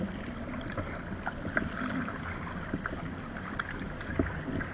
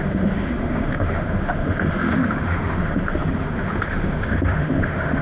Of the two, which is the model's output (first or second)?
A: second